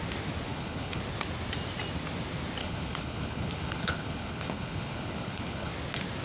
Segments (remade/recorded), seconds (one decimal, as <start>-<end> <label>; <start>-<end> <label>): 0.0-0.5 recorded; 0.5-1.0 remade; 1.0-2.6 recorded; 2.6-5.7 remade; 5.7-6.2 recorded